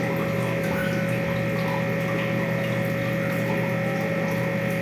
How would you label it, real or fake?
real